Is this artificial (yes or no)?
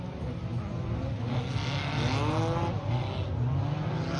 no